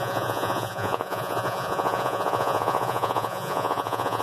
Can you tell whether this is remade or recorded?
remade